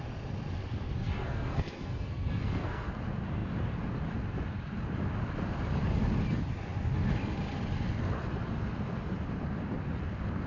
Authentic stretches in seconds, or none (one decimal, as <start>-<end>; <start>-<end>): 0.0-1.0; 2.9-10.5